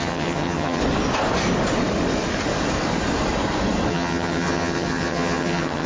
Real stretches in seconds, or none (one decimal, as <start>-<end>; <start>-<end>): 0.8-3.9